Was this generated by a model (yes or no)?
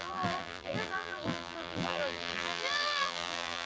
yes